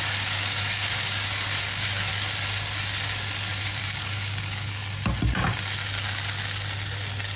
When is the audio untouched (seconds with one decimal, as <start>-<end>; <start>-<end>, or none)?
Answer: 2.1-3.8; 4.8-7.4

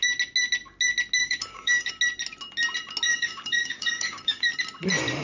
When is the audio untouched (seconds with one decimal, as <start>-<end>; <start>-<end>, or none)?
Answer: 0.0-1.2; 1.9-3.1; 4.5-5.2

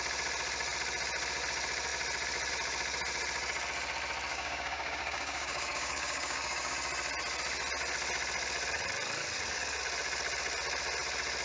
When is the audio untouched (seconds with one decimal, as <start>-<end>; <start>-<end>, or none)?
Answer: 0.0-4.3; 6.7-11.4